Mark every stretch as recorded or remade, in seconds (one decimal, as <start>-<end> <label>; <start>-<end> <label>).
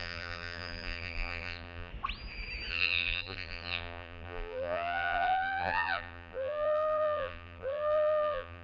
0.0-1.9 remade; 1.9-2.7 recorded; 2.7-8.6 remade